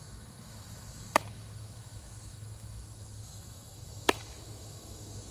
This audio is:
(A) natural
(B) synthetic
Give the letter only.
B